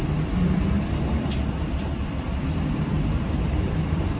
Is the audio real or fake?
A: fake